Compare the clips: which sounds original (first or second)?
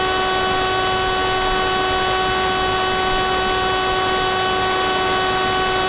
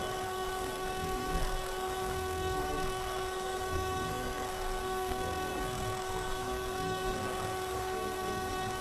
first